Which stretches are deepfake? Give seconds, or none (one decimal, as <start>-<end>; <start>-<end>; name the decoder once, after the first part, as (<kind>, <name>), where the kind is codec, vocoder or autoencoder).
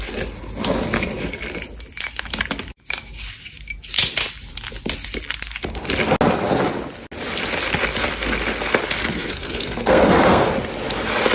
9.1-10.5 (codec, SNAC)